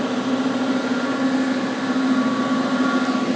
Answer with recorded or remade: recorded